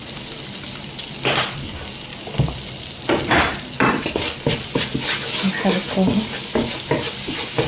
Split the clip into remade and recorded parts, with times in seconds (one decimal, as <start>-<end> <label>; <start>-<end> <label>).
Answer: 0.0-7.7 recorded